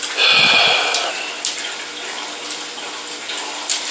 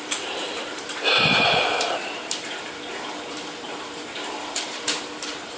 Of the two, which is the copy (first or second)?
second